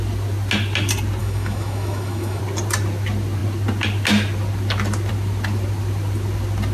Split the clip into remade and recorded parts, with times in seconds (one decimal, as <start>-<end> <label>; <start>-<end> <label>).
0.0-1.2 recorded; 1.2-2.4 remade; 2.4-6.7 recorded